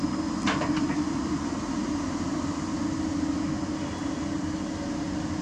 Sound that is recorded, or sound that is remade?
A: recorded